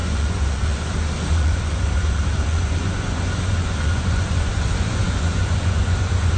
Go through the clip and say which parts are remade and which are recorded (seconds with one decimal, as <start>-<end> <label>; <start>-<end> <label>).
0.0-6.4 remade